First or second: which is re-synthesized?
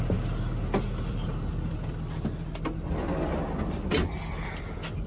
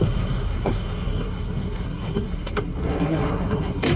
second